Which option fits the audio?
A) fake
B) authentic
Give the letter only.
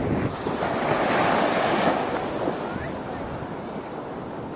B